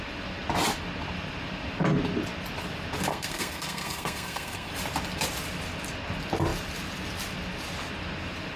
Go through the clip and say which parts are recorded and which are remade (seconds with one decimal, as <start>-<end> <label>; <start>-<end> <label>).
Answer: 0.0-3.1 recorded; 3.1-4.7 remade; 4.7-8.6 recorded